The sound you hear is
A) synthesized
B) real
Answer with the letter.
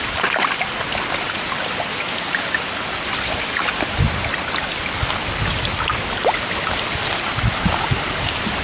B